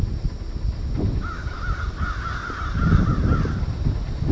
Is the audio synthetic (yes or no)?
no